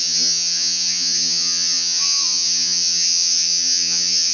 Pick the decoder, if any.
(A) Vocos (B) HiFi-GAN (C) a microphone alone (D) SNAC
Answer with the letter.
B